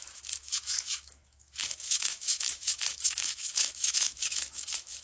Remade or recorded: remade